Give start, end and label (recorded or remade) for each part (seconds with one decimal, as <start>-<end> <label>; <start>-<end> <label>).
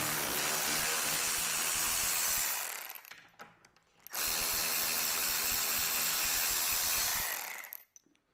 0.0-8.3 recorded